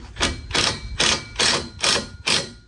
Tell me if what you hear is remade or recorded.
recorded